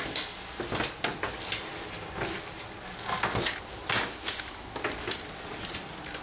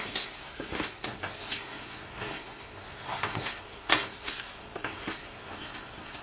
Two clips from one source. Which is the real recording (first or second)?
first